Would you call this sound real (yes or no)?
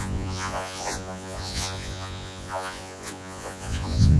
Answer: no